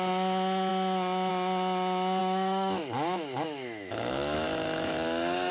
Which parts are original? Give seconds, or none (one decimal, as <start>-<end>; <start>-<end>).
0.0-2.2